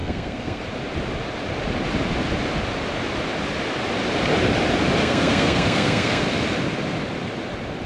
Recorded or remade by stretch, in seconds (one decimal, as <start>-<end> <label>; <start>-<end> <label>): 0.0-0.6 remade; 0.6-5.0 recorded; 5.0-6.2 remade; 6.2-7.9 recorded